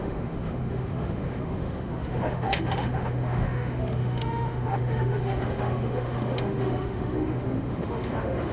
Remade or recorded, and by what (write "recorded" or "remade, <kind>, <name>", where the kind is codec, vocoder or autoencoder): remade, autoencoder, DAC-VAE